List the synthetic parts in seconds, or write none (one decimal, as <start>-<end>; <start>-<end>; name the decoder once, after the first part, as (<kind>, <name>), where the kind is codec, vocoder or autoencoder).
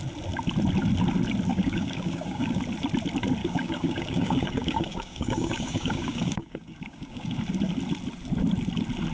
1.5-2.6 (codec, DAC); 3.4-7.4